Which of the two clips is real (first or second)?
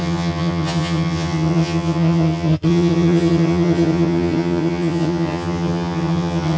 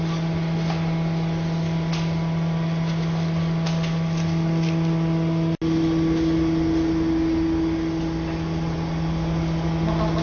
second